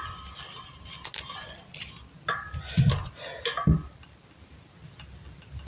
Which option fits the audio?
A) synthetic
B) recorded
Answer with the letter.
B